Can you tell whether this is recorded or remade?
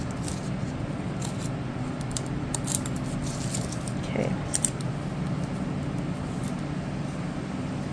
recorded